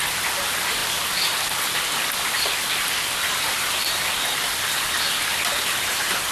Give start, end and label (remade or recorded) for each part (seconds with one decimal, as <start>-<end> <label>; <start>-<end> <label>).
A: 0.0-6.3 recorded